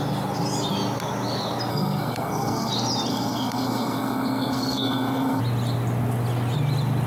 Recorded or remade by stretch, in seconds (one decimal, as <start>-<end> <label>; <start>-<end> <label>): 0.0-1.7 recorded; 1.7-2.7 remade; 2.7-3.1 recorded; 3.1-5.4 remade; 5.4-7.1 recorded